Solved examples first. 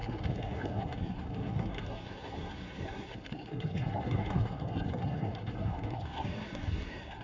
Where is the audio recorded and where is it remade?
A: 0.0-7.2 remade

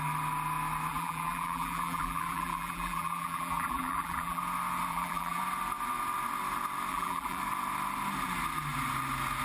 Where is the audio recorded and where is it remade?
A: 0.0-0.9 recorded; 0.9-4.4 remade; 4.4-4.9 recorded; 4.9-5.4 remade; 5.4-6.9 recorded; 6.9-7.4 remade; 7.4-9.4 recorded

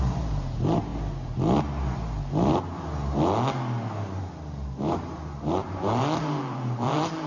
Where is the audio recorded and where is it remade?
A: 0.0-0.9 remade; 0.9-4.2 recorded; 4.2-7.3 remade